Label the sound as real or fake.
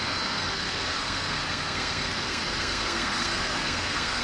fake